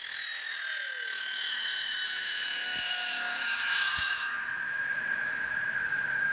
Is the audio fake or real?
fake